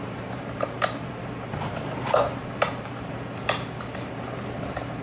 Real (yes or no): no